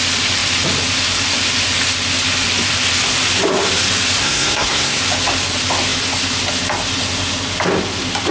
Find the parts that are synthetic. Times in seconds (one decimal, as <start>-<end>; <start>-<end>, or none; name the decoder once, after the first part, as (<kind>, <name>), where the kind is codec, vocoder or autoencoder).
4.2-5.0 (codec, SNAC)